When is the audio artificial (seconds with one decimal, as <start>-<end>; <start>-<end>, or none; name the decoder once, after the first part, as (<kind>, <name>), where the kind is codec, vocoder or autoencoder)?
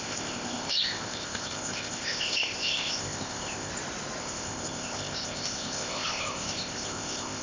0.0-3.7 (codec, ZipCodec); 4.2-7.4